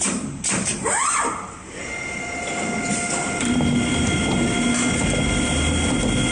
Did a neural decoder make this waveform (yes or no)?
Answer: no